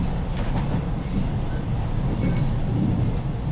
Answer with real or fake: real